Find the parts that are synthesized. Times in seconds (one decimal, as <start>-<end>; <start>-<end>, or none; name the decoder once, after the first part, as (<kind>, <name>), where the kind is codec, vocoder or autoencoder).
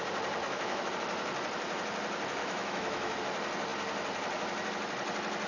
0.4-0.9 (autoencoder, DAC-VAE); 2.4-3.2